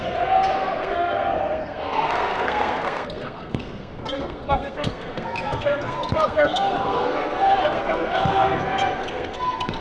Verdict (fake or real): fake